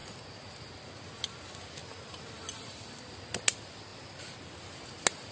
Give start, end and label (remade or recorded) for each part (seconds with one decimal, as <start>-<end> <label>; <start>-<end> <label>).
0.0-0.5 remade; 0.5-1.8 recorded; 1.8-3.1 remade; 3.1-3.9 recorded; 3.9-4.6 remade; 4.6-5.3 recorded